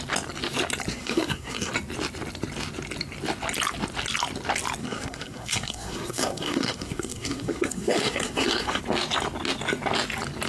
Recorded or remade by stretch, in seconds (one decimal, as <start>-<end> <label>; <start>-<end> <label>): 0.0-0.9 recorded; 0.9-1.7 remade; 1.7-4.8 recorded; 4.8-8.8 remade; 8.8-10.5 recorded